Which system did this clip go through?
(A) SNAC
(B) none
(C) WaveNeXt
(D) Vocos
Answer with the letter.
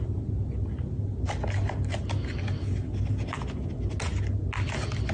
B